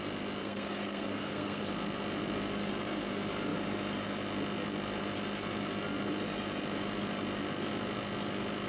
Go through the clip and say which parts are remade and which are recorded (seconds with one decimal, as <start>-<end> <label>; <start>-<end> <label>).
0.0-0.4 recorded; 0.4-1.6 remade; 1.6-8.7 recorded